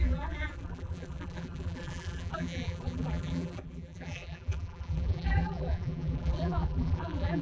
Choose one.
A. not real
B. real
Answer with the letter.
A